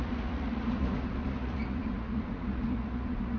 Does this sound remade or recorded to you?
remade